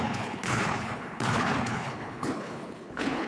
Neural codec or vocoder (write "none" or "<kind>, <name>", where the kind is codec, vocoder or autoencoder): codec, HILCodec